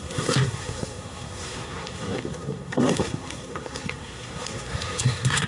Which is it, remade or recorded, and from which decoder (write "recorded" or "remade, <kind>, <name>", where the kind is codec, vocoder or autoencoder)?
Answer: remade, codec, SNAC